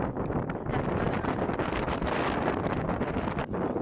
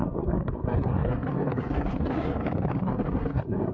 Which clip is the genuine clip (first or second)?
first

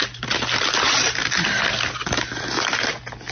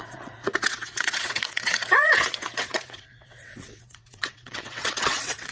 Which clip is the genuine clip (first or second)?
first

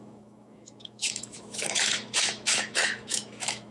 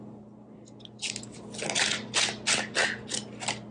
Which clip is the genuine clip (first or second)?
second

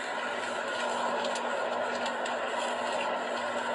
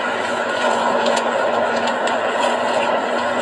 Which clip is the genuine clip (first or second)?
first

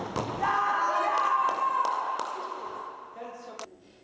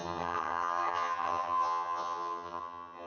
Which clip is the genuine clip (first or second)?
first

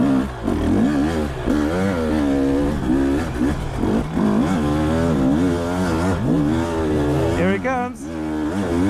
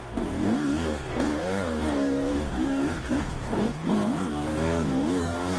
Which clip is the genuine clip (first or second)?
first